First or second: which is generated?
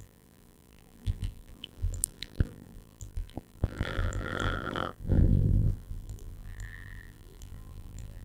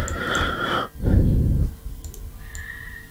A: first